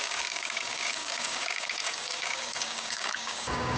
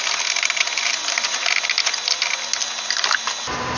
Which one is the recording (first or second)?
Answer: second